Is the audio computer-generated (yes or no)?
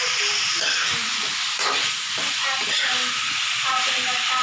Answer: no